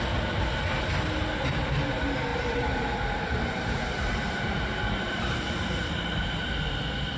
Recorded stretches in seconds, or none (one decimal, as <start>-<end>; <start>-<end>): 0.0-2.3; 6.6-7.2